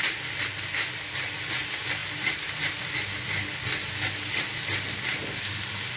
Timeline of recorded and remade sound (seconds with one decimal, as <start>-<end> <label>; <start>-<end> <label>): 0.0-6.0 recorded